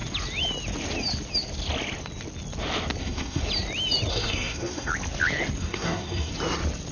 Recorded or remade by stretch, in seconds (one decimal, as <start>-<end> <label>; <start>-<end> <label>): 0.0-3.0 recorded; 3.0-3.4 remade; 3.4-4.1 recorded; 4.1-4.9 remade; 4.9-5.6 recorded; 5.6-6.3 remade; 6.3-6.9 recorded